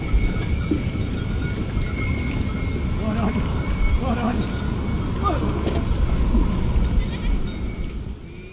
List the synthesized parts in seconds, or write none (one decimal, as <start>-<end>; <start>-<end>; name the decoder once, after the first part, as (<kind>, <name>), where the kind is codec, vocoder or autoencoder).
3.5-4.6 (codec, DAC)